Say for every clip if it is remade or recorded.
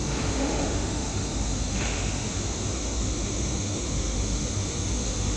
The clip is remade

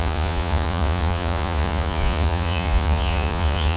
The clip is remade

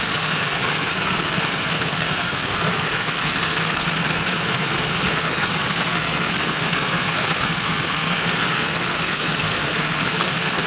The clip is remade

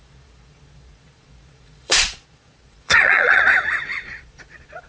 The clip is remade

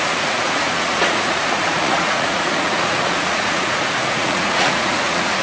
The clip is remade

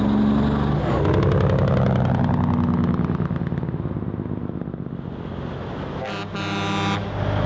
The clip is recorded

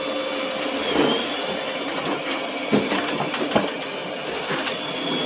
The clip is recorded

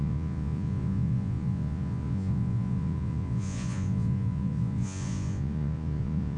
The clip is remade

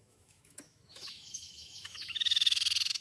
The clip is remade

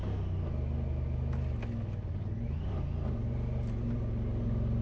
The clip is recorded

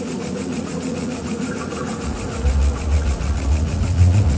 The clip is remade